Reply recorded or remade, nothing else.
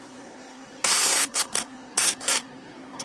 remade